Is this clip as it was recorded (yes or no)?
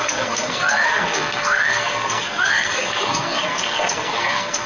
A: no